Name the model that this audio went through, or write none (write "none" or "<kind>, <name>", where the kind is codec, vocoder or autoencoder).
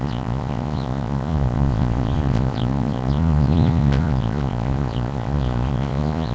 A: vocoder, Vocos